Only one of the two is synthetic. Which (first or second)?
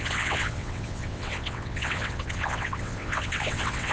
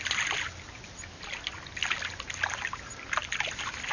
first